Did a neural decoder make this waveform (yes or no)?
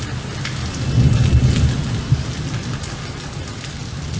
no